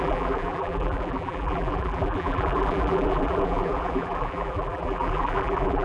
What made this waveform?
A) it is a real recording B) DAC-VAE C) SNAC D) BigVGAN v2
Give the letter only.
D